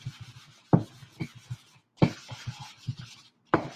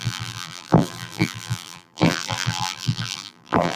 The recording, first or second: first